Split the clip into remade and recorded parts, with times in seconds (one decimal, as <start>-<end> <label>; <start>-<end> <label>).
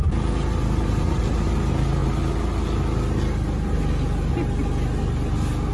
0.0-5.7 recorded